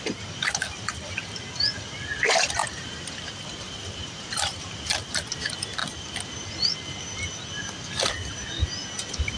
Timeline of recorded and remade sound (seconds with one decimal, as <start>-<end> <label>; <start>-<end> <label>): 0.0-2.6 recorded; 2.6-4.7 remade; 4.7-9.4 recorded

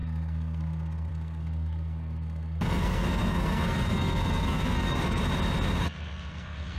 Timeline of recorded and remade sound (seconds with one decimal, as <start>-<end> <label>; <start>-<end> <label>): 0.0-5.2 remade; 5.2-5.8 recorded; 5.8-6.8 remade